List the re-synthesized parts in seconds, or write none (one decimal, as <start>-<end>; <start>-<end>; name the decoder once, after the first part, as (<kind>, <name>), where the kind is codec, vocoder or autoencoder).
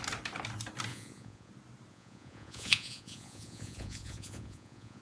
0.9-1.5 (vocoder, Vocos); 1.9-5.0